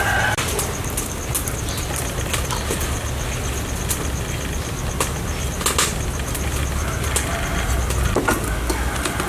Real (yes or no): yes